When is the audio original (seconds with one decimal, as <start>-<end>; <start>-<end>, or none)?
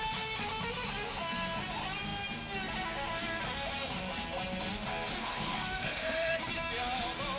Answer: 0.0-5.2; 6.4-7.4